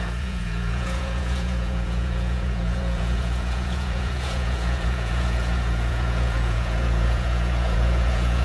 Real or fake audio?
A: fake